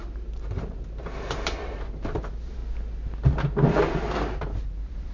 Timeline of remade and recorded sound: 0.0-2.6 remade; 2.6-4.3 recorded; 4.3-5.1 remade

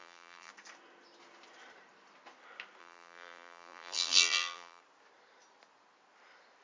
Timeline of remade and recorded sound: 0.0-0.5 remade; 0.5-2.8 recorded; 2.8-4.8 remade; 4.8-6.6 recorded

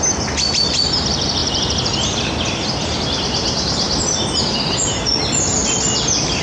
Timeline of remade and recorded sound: 0.0-1.4 recorded; 1.4-5.0 remade; 5.0-5.6 recorded; 5.6-6.4 remade